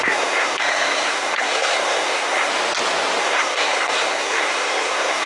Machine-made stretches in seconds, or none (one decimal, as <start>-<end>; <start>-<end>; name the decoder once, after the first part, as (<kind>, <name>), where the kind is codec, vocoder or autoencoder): 0.0-2.5 (codec, SNAC); 3.2-5.3